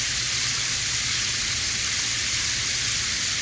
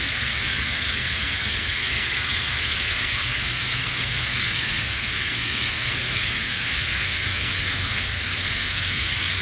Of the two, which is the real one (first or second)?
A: first